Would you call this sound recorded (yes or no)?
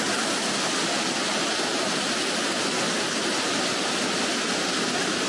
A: yes